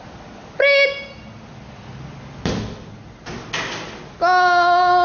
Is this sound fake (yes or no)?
no